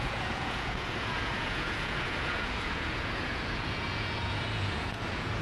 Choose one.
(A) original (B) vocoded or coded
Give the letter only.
B